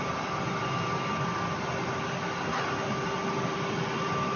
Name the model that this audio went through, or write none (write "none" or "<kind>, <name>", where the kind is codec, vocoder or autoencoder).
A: none